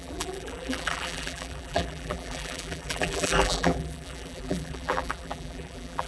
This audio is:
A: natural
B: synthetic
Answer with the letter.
B